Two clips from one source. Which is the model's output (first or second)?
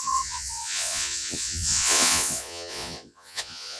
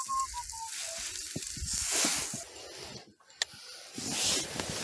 first